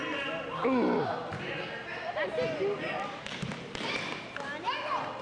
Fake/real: real